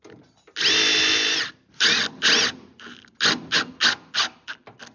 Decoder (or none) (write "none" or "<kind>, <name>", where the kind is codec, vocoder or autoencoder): none